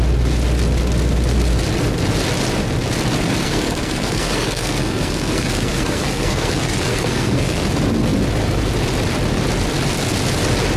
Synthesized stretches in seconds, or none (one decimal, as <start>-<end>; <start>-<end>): 3.4-7.7